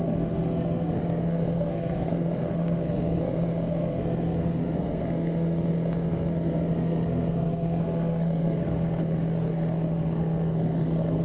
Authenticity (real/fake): fake